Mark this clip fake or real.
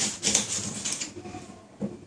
real